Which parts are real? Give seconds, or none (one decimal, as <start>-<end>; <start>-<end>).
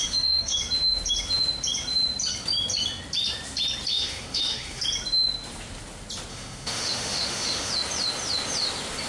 0.6-3.9; 4.8-6.3; 7.7-9.1